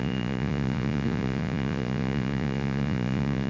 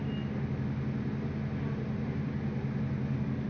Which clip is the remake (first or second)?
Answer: first